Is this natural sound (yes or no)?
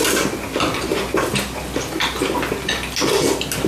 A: yes